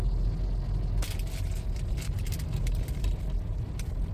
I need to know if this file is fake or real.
real